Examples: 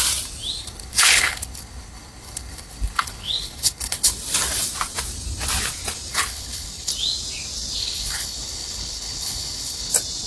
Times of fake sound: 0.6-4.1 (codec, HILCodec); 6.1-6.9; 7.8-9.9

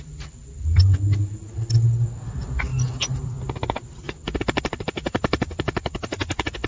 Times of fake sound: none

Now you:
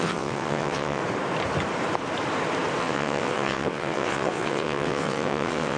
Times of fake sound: 0.0-1.0 (vocoder, WaveNeXt); 2.8-5.8

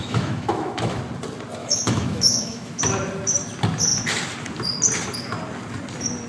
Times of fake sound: 0.0-1.0 (autoencoder, DAC-VAE); 1.6-2.8

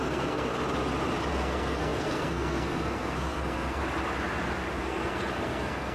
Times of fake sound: 0.0-0.5 (codec, SNAC); 1.3-3.8; 4.8-5.9